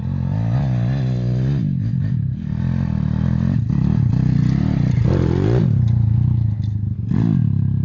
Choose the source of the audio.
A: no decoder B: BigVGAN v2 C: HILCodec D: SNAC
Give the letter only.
A